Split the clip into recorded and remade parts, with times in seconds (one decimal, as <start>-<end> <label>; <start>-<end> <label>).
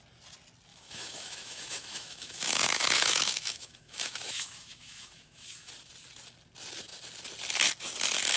0.0-0.7 recorded; 0.7-5.7 remade; 5.7-8.4 recorded